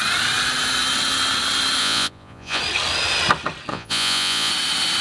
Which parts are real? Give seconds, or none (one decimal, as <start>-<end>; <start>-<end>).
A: 0.0-1.8; 2.6-3.7; 4.5-5.0